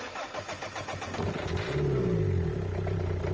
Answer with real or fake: real